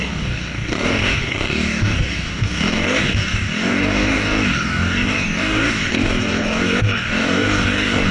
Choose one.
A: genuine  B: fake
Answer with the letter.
B